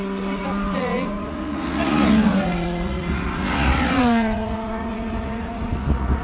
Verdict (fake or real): fake